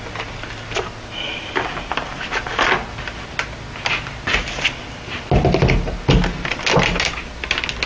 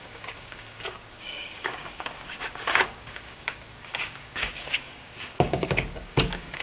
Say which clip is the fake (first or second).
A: second